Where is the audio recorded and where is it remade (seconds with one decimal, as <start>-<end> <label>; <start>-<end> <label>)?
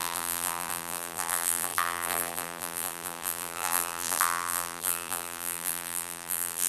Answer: 0.0-6.7 remade